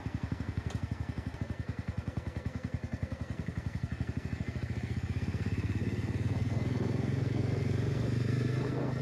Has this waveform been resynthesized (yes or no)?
yes